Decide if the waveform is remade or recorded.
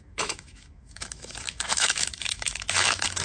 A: remade